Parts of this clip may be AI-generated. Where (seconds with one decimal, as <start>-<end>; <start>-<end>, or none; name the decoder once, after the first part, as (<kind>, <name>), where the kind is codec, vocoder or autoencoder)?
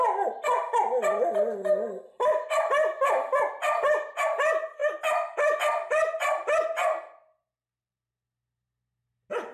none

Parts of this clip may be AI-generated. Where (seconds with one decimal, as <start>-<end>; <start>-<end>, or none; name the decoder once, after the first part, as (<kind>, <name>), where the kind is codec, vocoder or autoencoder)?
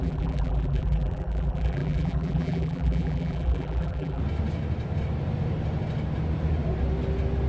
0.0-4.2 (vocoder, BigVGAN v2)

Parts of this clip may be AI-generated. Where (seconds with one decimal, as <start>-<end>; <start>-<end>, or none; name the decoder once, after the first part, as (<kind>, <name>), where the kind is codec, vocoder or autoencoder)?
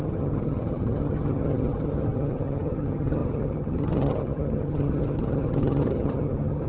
0.0-6.7 (vocoder, HiFi-GAN)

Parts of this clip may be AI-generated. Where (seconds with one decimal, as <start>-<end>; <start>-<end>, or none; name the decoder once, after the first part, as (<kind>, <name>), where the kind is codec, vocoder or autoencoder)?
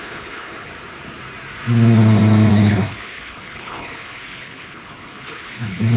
0.0-0.7 (codec, HILCodec); 2.5-6.0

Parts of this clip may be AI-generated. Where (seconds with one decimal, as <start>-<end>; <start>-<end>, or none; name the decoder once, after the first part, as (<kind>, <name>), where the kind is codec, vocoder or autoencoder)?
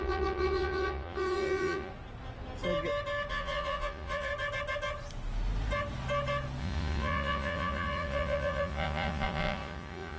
0.0-1.9 (vocoder, Vocos); 3.3-4.3; 6.6-10.2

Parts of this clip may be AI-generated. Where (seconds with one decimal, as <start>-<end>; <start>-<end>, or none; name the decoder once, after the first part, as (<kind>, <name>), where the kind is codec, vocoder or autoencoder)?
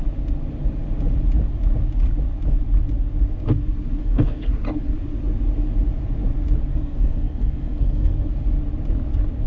4.0-4.5 (codec, SNAC); 6.7-8.1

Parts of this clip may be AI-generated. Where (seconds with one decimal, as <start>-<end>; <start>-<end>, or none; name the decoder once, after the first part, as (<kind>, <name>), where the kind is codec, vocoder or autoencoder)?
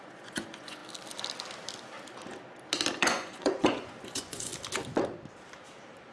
0.0-0.8 (vocoder, Vocos); 3.0-4.5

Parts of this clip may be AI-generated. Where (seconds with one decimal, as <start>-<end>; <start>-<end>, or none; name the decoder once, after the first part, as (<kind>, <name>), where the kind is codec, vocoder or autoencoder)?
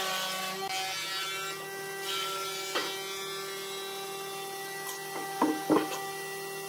none